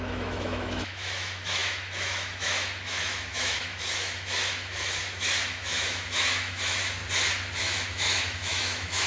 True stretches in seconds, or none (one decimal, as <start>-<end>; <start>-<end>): 7.0-7.6